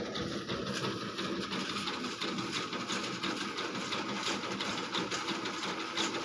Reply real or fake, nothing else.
real